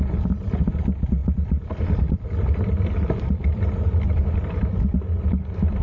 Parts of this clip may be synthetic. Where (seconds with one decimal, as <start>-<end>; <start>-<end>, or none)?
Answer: 1.2-4.7

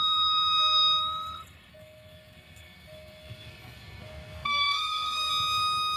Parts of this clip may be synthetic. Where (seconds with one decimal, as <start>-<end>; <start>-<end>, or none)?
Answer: 1.7-5.3